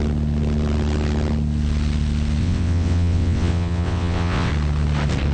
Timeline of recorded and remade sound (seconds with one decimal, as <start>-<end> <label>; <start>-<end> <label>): 0.0-2.4 recorded; 2.4-4.5 remade; 4.5-5.3 recorded